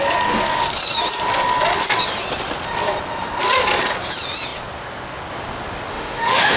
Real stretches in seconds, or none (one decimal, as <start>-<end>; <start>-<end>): 0.0-5.9